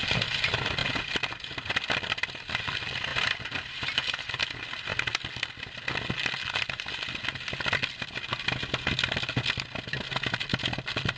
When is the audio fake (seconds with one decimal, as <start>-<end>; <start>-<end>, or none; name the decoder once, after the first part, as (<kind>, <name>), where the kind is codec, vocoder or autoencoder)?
0.8-1.4 (vocoder, BigVGAN v2); 3.1-4.3